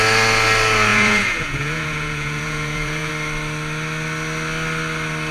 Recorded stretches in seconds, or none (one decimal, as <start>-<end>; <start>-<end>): 0.0-0.9; 3.1-5.3